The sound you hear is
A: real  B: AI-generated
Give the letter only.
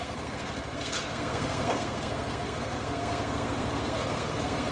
B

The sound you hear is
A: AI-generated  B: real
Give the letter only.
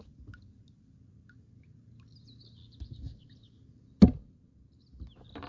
B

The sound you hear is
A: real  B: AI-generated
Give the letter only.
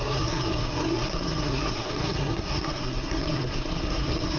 B